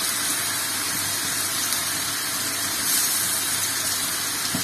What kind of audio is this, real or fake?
real